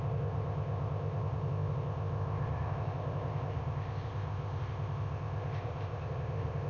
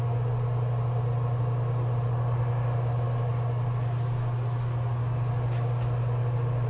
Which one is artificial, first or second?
first